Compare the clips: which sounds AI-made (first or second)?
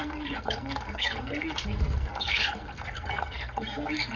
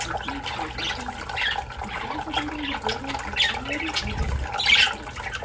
first